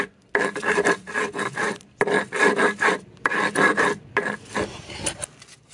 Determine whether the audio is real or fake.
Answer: real